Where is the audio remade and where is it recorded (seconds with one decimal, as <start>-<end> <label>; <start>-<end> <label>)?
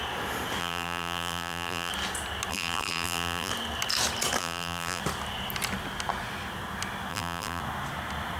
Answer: 0.0-0.6 recorded; 0.6-1.9 remade; 1.9-2.5 recorded; 2.5-3.5 remade; 3.5-4.4 recorded; 4.4-5.0 remade; 5.0-7.1 recorded; 7.1-7.6 remade; 7.6-8.4 recorded